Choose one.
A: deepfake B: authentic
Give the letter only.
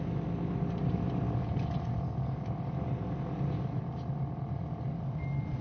B